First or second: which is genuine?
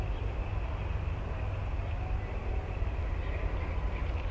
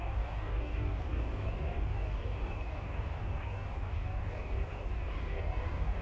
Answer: first